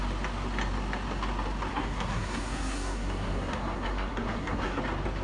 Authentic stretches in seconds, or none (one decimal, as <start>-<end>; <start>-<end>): 0.0-1.7; 4.8-5.2